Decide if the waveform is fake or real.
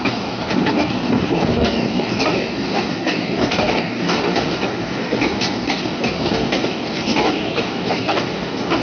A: fake